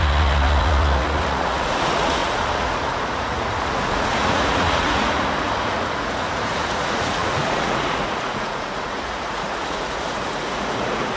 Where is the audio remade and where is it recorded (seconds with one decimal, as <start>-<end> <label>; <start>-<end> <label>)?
0.0-11.2 remade